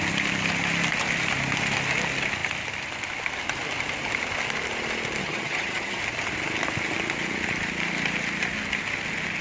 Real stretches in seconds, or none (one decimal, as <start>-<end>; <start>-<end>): 0.0-5.2; 6.0-9.4